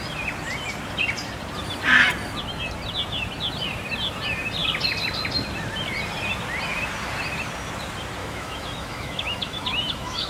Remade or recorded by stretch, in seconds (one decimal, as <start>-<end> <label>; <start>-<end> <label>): 0.0-8.2 recorded; 8.2-10.3 remade